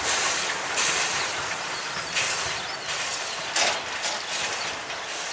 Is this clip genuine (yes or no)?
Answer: yes